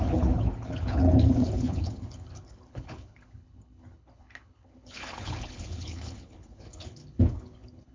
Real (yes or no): no